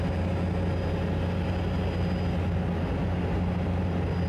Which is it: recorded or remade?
recorded